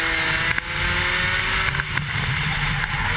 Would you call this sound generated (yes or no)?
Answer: no